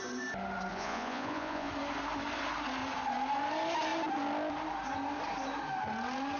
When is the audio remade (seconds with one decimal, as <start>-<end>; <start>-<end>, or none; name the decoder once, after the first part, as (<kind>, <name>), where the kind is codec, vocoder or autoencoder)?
0.7-1.7 (vocoder, Vocos)